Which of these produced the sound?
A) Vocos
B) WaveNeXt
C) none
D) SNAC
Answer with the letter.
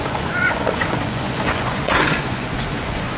A